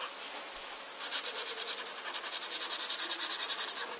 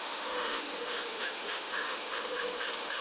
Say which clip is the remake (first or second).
second